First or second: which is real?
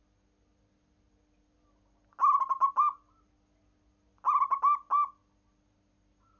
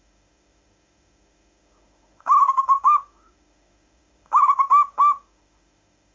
first